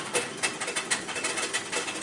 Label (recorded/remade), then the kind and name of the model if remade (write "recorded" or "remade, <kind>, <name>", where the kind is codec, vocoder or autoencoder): recorded